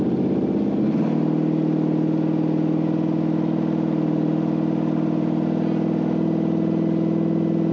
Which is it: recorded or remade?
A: recorded